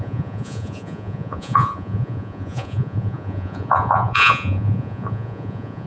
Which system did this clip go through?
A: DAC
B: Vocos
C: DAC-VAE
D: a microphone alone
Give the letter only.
B